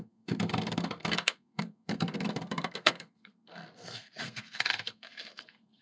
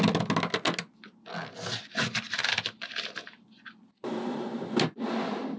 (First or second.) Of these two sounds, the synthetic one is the first